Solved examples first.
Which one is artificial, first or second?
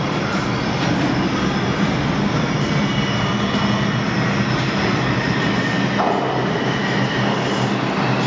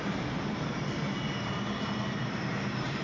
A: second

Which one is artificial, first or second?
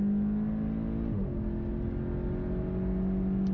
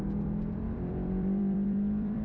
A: second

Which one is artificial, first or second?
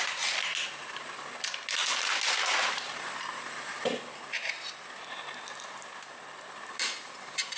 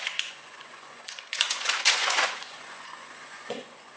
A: second